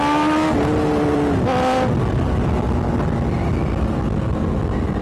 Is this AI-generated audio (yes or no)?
no